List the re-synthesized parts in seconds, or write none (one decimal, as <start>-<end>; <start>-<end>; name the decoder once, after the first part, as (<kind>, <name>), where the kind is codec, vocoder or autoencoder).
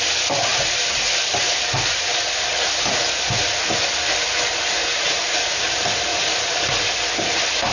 4.8-5.4 (vocoder, BigVGAN v2); 6.1-6.7